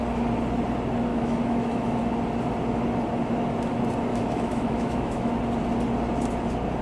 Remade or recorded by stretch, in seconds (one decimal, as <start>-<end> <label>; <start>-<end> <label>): 0.0-1.1 recorded; 1.1-2.0 remade; 2.0-4.1 recorded; 4.1-5.4 remade; 5.4-6.8 recorded